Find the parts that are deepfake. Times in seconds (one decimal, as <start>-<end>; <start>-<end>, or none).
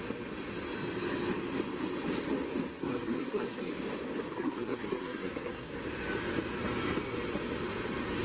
2.7-3.7; 4.3-5.7